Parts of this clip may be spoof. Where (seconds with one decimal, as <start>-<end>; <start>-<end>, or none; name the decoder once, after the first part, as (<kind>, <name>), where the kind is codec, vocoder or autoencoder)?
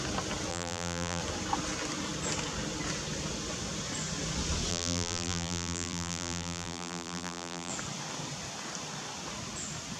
0.5-1.2 (vocoder, BigVGAN v2); 4.7-7.7